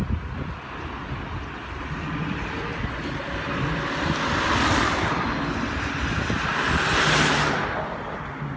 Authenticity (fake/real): real